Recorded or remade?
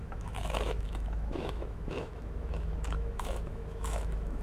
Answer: remade